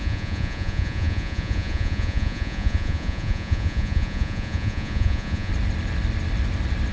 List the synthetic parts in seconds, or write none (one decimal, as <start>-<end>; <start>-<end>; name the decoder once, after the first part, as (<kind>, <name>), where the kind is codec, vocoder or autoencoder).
0.0-5.5 (vocoder, Vocos)